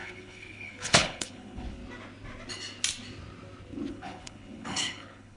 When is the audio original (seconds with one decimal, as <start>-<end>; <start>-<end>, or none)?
1.8-3.9